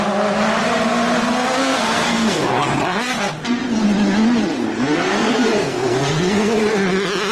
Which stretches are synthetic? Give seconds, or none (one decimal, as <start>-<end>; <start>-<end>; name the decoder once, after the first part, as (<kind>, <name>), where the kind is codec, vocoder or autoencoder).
1.6-2.7 (codec, SNAC); 4.7-6.6